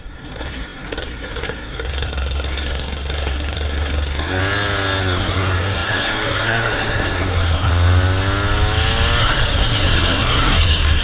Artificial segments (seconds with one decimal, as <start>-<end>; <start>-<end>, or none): 0.0-4.4; 5.0-7.7; 9.2-11.0